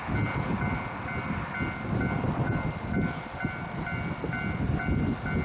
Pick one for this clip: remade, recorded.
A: recorded